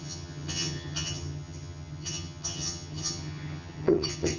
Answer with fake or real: fake